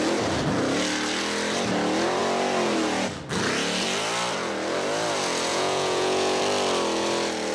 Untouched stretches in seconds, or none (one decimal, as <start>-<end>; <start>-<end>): 0.0-5.5; 6.4-7.5